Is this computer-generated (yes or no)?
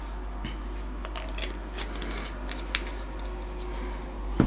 no